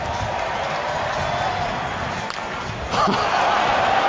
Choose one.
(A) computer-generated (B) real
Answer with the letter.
B